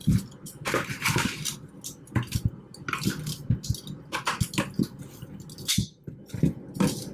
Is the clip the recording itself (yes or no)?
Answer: yes